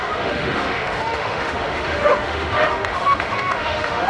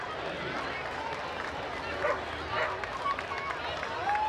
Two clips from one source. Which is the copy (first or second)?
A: first